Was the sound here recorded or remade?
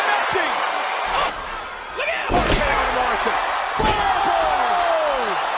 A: recorded